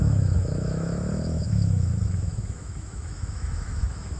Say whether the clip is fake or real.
fake